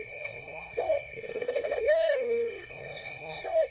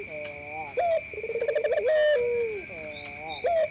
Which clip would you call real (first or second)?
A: second